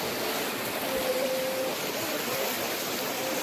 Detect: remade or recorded recorded